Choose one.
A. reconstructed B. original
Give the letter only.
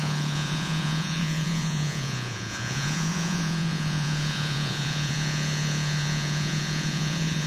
A